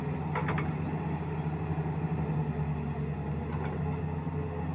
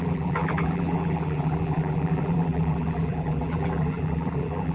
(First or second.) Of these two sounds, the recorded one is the first